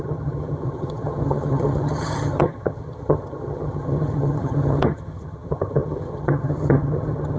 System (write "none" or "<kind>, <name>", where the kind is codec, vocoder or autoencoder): vocoder, HiFi-GAN